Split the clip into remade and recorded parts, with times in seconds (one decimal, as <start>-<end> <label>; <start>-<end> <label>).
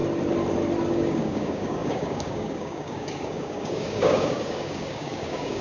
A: 0.0-0.9 recorded; 0.9-5.6 remade